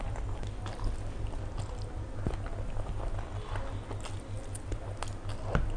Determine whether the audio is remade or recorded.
recorded